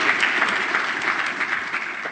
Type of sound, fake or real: real